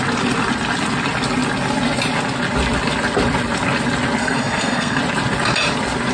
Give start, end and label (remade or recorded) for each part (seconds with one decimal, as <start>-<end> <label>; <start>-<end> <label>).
0.0-4.2 recorded; 4.2-5.0 remade; 5.0-6.1 recorded